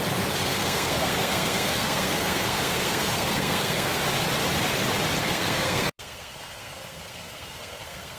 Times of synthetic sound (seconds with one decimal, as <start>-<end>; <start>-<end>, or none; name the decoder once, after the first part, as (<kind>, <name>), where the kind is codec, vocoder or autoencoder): 0.4-4.0 (codec, SNAC); 5.2-8.2